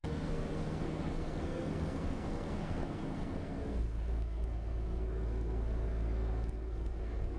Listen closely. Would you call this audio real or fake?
fake